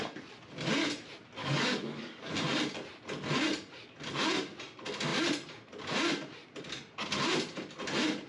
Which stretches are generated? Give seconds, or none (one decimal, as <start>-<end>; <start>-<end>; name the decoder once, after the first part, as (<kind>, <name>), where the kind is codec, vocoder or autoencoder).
1.4-2.3 (codec, DAC)